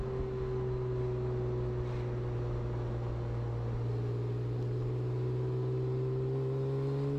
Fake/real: real